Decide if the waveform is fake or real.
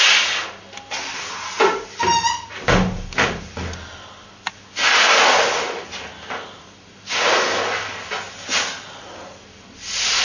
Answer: real